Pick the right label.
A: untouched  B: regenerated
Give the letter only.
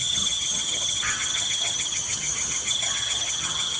B